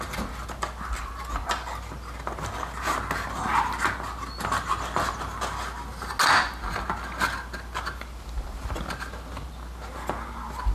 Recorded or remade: recorded